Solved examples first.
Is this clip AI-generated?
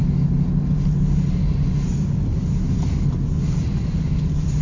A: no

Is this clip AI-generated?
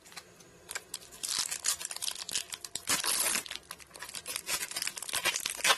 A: no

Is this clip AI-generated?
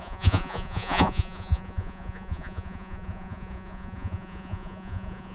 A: yes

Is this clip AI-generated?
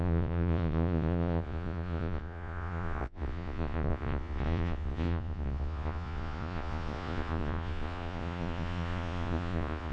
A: yes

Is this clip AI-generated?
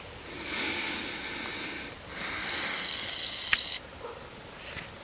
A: no